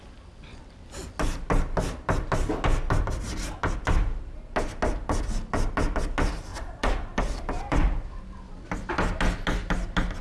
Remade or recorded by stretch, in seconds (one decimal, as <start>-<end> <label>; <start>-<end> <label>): 0.0-6.5 recorded; 6.5-8.7 remade; 8.7-10.2 recorded